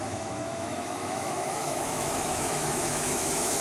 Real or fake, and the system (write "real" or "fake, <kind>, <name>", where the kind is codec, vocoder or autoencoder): fake, autoencoder, DAC-VAE